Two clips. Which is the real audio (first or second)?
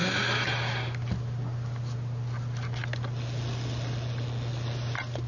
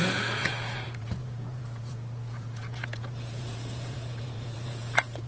first